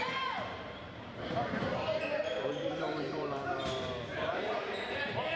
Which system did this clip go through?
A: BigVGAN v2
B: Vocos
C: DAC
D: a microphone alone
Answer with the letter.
A